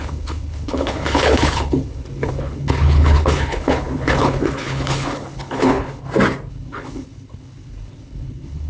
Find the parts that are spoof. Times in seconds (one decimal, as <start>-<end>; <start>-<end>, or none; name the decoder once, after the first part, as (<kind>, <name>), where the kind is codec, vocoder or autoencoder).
0.0-6.0 (codec, HILCodec); 6.5-8.7